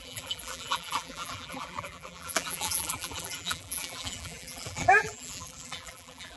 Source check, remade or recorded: remade